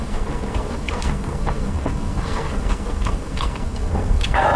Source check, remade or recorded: remade